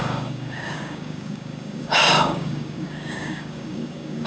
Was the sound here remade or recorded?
remade